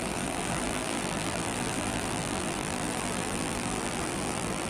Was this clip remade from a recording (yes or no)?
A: yes